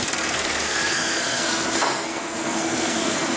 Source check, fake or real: fake